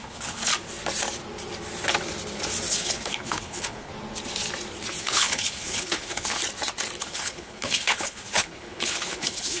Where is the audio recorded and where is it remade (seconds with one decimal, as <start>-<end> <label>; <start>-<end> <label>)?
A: 0.0-0.5 remade; 0.5-2.7 recorded; 2.7-3.9 remade; 3.9-5.0 recorded; 5.0-6.4 remade; 6.4-7.0 recorded; 7.0-9.6 remade